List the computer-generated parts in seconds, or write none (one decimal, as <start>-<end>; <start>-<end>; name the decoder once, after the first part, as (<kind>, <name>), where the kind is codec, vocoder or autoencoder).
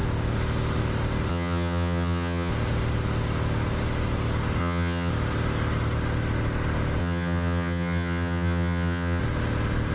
1.3-2.5 (vocoder, HiFi-GAN); 4.6-5.1; 7.0-9.2